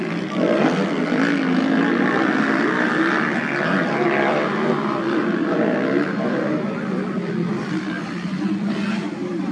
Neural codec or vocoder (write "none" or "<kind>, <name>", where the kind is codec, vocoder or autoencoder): none